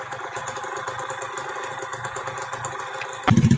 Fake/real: real